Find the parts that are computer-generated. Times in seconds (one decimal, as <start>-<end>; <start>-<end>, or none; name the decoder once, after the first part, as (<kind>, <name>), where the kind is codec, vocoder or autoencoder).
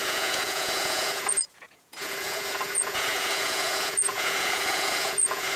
0.0-5.6 (vocoder, Vocos)